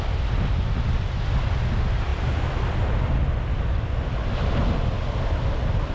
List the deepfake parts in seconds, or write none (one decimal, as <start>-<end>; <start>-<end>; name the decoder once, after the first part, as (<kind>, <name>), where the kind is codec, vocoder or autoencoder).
none